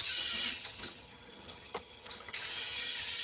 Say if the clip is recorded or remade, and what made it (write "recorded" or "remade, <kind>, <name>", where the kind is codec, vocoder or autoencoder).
remade, vocoder, HiFi-GAN